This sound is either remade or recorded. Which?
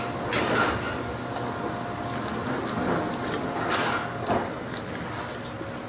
recorded